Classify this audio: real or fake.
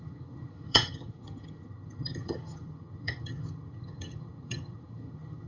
fake